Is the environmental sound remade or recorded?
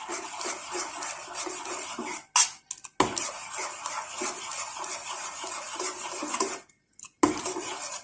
recorded